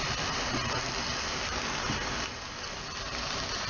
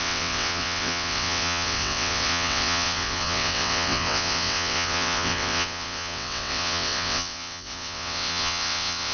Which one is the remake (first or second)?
second